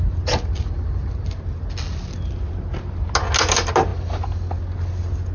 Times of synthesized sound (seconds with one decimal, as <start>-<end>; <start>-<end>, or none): none